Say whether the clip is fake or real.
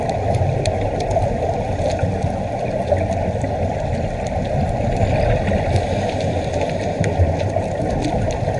real